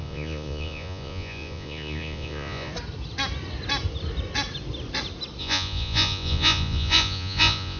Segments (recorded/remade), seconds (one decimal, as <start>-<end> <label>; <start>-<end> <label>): 0.0-2.7 remade; 2.7-5.4 recorded; 5.4-7.8 remade